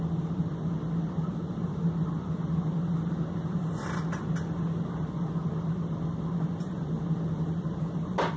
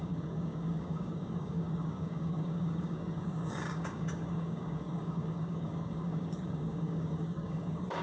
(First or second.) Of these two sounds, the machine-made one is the second